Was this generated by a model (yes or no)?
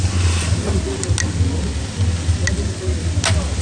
no